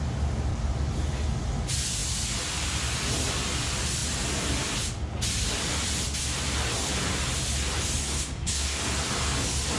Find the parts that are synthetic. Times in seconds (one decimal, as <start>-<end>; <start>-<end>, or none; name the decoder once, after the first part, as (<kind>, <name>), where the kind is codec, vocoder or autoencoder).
8.0-8.8 (codec, SNAC)

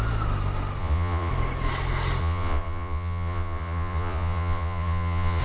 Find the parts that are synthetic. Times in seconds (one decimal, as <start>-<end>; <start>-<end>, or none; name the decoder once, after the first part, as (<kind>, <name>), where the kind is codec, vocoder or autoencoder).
0.8-1.3 (vocoder, Vocos); 2.2-5.4

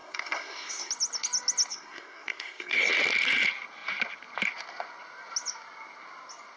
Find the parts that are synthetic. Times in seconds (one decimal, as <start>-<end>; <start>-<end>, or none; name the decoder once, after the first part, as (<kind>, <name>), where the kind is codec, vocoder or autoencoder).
0.0-0.9 (codec, SNAC); 1.7-2.9

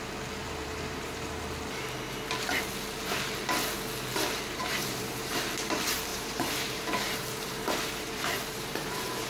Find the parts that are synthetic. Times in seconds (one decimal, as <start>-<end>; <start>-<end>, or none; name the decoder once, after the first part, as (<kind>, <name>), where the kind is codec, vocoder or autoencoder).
0.4-1.4 (vocoder, BigVGAN v2); 4.6-5.3; 6.1-9.3

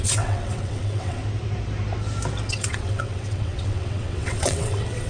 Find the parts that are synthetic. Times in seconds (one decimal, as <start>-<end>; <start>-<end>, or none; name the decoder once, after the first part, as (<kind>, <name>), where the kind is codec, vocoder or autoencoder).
0.0-1.2 (vocoder, WaveNeXt); 2.5-5.1

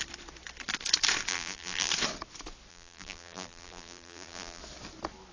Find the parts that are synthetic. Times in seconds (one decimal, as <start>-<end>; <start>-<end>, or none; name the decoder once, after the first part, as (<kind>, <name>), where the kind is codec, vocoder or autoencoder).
1.3-1.9 (vocoder, BigVGAN v2); 2.7-4.6

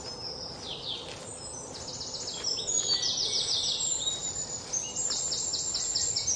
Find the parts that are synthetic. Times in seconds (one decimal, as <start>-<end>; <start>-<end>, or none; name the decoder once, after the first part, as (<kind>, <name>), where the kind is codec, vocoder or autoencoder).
none